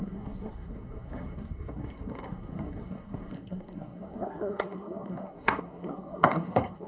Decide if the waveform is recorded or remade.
remade